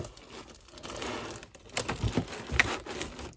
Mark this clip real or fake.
real